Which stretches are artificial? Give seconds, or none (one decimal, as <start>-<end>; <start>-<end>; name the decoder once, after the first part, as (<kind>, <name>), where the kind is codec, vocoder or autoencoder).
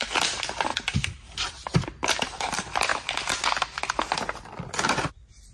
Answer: 0.0-2.9 (vocoder, BigVGAN v2); 5.1-5.5